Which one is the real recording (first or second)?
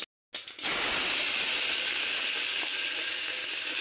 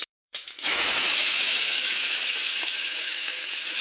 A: first